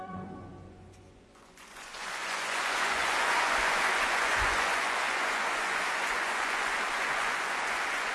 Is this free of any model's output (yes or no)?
no